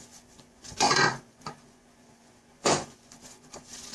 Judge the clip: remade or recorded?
remade